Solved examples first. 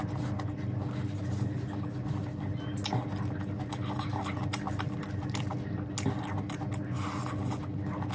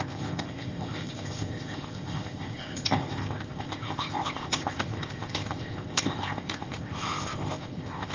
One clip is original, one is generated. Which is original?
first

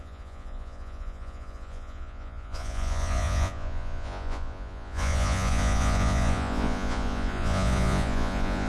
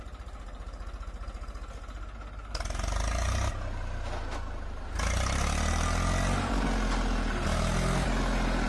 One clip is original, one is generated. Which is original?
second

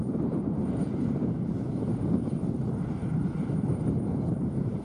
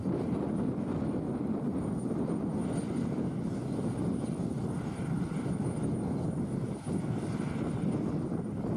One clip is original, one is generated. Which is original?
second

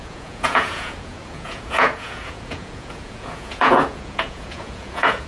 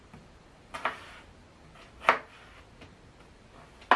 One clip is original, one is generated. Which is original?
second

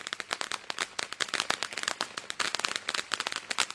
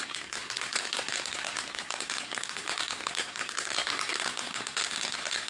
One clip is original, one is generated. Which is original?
first